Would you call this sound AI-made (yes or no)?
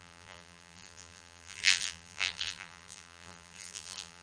yes